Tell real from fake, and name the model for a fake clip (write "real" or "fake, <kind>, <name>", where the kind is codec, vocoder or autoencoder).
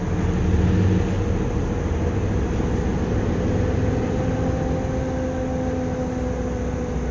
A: real